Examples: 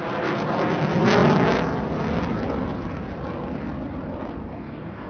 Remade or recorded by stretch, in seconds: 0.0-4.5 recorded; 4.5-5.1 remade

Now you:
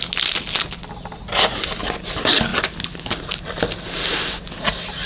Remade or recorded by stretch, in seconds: 0.0-5.1 recorded

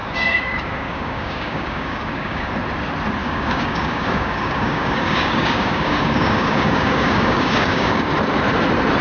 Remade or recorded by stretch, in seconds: 0.0-2.5 remade; 2.5-3.2 recorded; 3.2-8.1 remade; 8.1-9.0 recorded

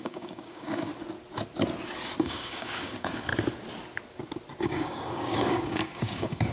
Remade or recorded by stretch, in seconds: 0.0-0.9 remade; 0.9-2.2 recorded; 2.2-3.3 remade; 3.3-4.6 recorded; 4.6-6.5 remade

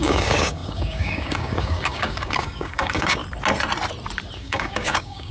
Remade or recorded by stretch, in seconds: 0.0-3.2 remade; 3.2-4.4 recorded; 4.4-5.3 remade